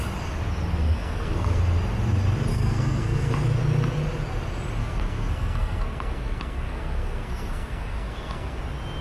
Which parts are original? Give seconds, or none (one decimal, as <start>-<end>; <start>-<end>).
0.0-0.8; 1.6-2.5; 3.3-4.8; 8.6-9.0

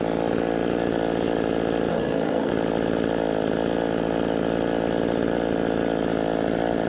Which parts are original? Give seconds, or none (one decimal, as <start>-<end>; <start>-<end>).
0.0-1.9; 2.5-6.9

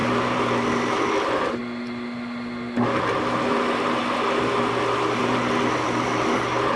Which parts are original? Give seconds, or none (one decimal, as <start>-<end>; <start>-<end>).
0.0-6.8